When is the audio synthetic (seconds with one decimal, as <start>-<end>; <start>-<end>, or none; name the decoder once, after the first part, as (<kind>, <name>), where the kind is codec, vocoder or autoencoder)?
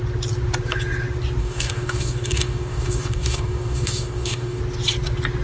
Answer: 1.4-4.6 (codec, DAC)